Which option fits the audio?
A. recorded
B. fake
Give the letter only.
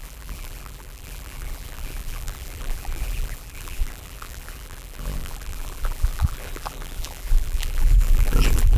B